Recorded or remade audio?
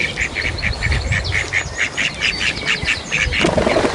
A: recorded